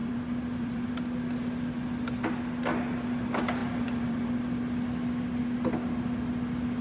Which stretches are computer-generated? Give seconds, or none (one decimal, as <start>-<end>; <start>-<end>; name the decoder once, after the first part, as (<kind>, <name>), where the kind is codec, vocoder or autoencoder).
0.0-0.9 (vocoder, BigVGAN v2); 3.6-4.3